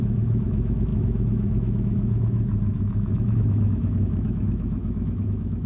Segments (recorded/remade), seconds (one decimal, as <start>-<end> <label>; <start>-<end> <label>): 0.0-5.7 remade